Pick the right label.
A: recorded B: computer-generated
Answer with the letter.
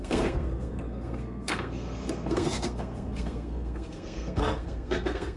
B